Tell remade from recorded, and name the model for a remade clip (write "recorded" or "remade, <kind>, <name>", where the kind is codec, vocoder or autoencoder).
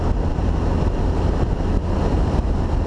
recorded